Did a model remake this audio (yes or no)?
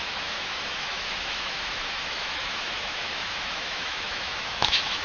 yes